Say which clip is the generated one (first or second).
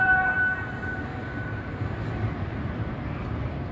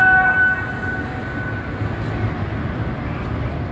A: first